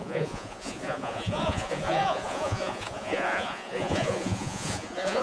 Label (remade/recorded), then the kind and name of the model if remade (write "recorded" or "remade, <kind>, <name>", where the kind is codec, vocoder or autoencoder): remade, vocoder, Vocos